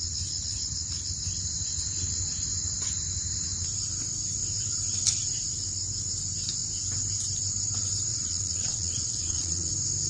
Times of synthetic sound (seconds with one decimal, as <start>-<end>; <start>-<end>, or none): 8.1-9.7